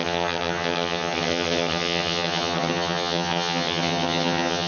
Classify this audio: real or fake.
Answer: fake